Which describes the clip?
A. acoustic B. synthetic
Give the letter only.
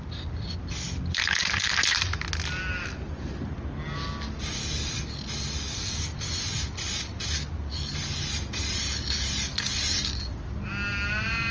A